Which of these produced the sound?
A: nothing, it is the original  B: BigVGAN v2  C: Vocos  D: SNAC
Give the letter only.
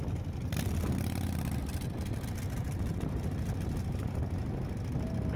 A